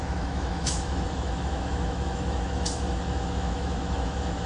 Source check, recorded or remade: remade